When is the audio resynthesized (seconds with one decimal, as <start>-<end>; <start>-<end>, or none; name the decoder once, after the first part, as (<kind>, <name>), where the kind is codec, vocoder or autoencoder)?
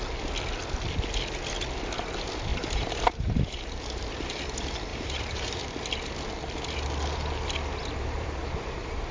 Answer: 2.5-4.4 (vocoder, BigVGAN v2); 4.9-5.7; 7.8-9.1